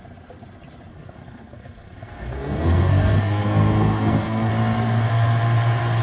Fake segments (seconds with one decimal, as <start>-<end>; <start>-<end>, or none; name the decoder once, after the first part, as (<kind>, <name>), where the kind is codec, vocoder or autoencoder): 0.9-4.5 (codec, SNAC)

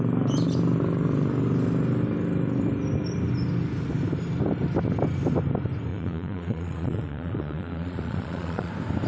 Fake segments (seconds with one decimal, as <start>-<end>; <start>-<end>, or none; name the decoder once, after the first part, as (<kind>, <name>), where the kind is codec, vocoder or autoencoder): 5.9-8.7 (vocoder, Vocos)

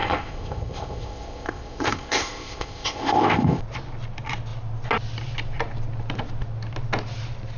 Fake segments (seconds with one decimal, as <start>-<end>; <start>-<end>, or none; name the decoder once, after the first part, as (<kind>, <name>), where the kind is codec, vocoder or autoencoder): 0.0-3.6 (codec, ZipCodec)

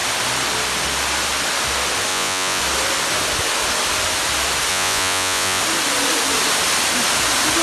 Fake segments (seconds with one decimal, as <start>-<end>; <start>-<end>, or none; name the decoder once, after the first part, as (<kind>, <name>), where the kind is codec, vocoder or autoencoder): 2.1-2.6 (vocoder, Vocos); 4.7-5.6

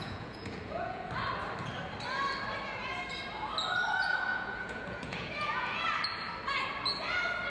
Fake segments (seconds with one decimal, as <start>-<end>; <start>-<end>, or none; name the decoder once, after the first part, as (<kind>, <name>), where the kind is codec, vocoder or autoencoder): 0.0-1.1 (vocoder, Vocos); 4.3-5.8